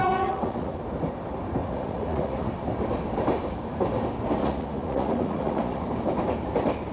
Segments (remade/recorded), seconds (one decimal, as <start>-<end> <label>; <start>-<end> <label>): 0.0-0.8 remade; 0.8-1.6 recorded; 1.6-2.5 remade; 2.5-4.4 recorded; 4.4-5.8 remade; 5.8-6.9 recorded